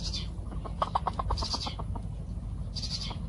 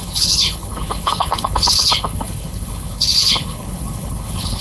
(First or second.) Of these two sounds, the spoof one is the second